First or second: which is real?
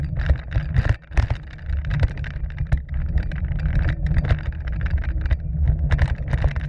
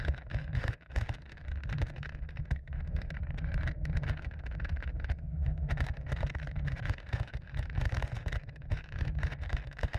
first